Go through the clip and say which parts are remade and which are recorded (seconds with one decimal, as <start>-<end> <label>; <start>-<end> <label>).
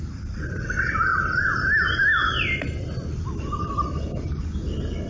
0.0-5.1 recorded